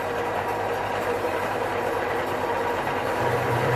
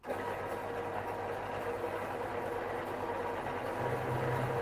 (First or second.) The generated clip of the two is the first